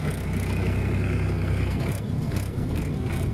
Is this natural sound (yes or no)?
no